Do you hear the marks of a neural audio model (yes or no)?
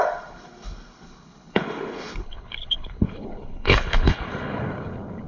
yes